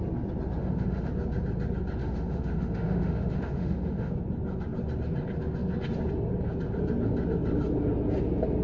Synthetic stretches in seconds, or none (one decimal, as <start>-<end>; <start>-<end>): 0.6-1.1; 2.0-4.1